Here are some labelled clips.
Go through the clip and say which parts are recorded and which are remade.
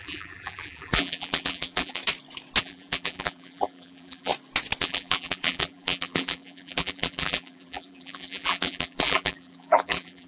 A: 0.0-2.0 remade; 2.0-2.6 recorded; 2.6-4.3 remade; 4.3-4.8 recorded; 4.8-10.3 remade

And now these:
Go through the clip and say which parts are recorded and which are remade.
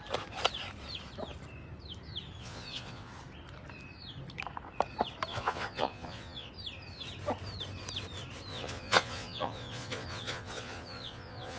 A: 0.0-2.4 recorded; 2.4-3.1 remade; 3.1-5.3 recorded; 5.3-6.5 remade; 6.5-8.5 recorded; 8.5-11.6 remade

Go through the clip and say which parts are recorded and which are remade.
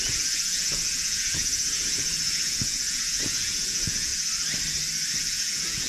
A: 0.0-4.1 remade; 4.1-5.2 recorded; 5.2-5.9 remade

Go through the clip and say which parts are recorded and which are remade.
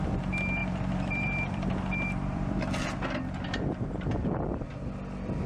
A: 0.0-0.6 recorded; 0.6-2.6 remade; 2.6-5.5 recorded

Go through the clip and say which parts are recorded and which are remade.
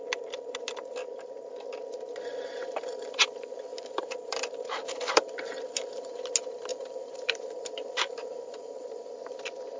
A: 0.0-3.7 recorded; 3.7-6.2 remade; 6.2-6.7 recorded; 6.7-9.1 remade; 9.1-9.8 recorded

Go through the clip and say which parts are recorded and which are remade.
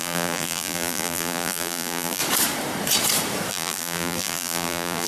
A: 0.0-2.2 remade; 2.2-3.5 recorded; 3.5-5.1 remade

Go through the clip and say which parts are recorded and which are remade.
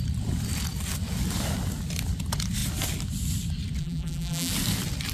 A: 0.0-3.8 recorded; 3.8-4.5 remade; 4.5-5.1 recorded